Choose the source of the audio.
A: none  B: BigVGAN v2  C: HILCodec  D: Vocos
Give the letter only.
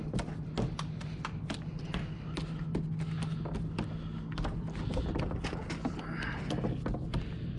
A